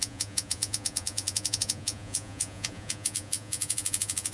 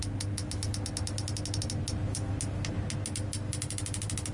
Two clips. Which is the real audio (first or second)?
second